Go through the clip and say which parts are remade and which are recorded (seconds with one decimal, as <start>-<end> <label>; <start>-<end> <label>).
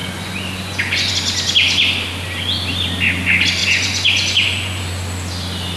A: 0.0-1.1 remade; 1.1-3.6 recorded; 3.6-4.8 remade; 4.8-5.8 recorded